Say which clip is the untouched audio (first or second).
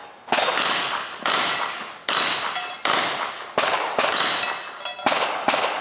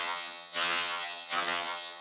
first